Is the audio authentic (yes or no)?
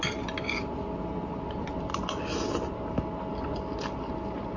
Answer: yes